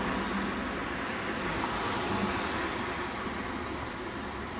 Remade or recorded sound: recorded